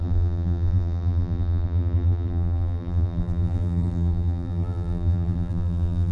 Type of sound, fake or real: fake